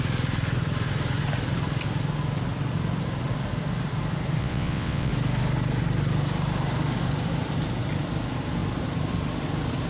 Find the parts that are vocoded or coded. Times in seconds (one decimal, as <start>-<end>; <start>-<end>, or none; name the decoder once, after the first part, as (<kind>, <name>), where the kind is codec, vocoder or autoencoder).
4.4-5.1 (vocoder, WaveNeXt)